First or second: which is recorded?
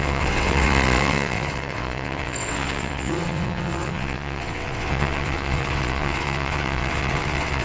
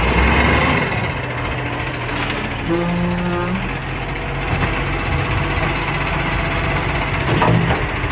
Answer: second